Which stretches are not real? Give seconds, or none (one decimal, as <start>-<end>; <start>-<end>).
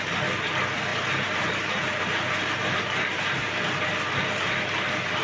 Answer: 0.9-4.0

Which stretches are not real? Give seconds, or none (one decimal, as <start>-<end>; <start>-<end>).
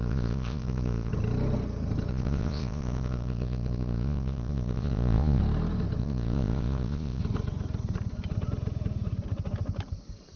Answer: 0.0-1.1; 2.1-5.4; 6.0-7.2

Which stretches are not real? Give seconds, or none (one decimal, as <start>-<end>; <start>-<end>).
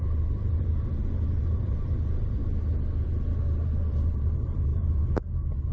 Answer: 0.0-2.4; 3.9-5.7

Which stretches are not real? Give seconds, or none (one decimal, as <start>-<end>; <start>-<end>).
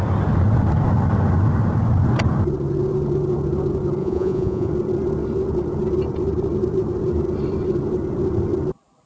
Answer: 4.0-4.7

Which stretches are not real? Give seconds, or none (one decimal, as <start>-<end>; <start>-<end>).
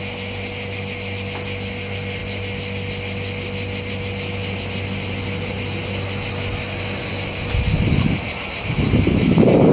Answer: none